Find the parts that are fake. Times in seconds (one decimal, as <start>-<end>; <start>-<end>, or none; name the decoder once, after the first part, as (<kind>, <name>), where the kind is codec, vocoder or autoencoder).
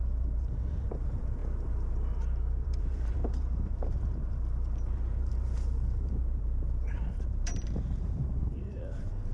0.0-9.3 (vocoder, BigVGAN v2)